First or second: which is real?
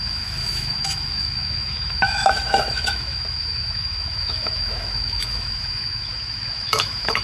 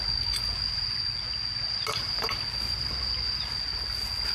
second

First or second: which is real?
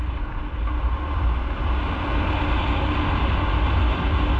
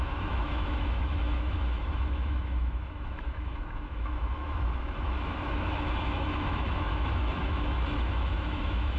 first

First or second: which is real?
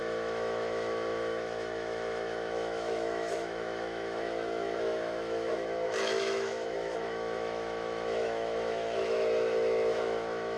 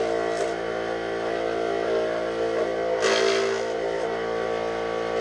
second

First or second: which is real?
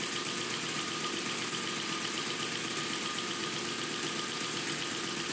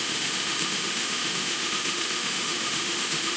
first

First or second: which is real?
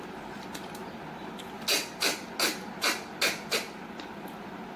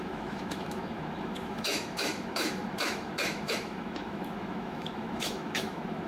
first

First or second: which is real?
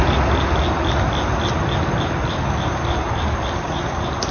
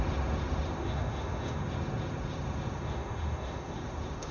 first